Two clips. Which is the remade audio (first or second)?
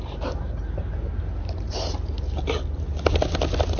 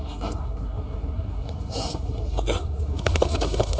second